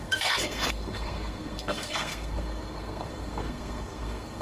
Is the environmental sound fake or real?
fake